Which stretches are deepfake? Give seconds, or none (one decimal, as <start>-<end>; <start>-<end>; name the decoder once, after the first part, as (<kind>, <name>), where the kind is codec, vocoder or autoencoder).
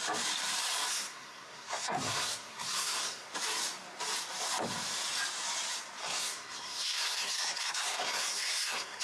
0.9-3.3 (codec, SNAC); 6.0-9.0